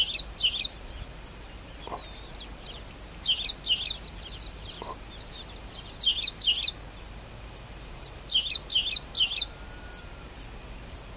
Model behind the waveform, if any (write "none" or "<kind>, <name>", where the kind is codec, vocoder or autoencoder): none